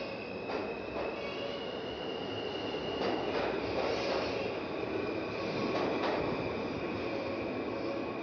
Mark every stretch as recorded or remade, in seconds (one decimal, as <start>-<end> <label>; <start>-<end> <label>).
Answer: 0.0-8.2 recorded